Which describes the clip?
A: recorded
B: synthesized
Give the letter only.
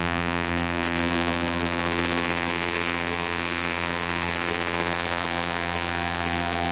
B